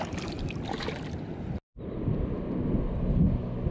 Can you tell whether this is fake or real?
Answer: real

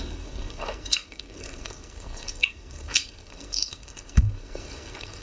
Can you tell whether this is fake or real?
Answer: fake